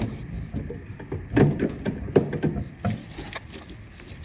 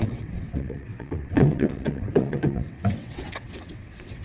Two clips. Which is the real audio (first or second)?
first